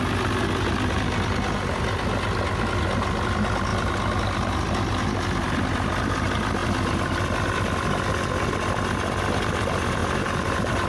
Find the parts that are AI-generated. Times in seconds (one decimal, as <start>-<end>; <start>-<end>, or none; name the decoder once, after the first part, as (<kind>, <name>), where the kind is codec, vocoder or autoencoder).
10.0-10.9 (vocoder, BigVGAN v2)